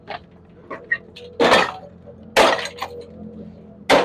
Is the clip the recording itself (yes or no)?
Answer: yes